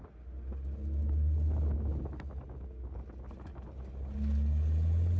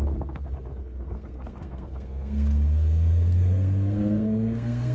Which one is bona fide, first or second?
first